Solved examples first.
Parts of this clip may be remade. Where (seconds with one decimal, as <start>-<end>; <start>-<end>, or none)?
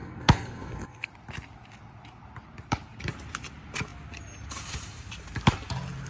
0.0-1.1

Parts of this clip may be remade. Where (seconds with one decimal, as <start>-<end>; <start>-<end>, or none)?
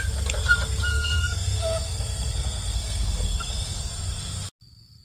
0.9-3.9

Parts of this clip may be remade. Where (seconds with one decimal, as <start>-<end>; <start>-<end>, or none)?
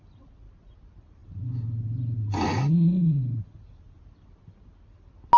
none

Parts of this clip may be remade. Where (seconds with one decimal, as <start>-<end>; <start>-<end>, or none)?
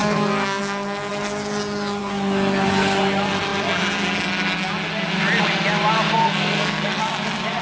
0.0-0.6; 6.2-7.0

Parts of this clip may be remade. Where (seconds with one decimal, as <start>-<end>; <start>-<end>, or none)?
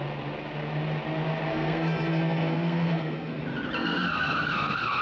1.5-3.4; 3.8-5.0